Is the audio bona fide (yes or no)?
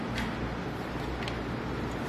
yes